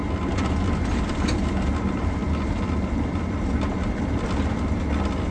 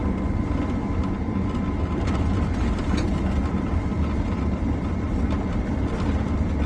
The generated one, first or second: second